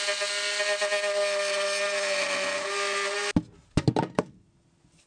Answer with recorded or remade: recorded